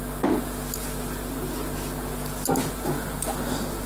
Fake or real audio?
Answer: real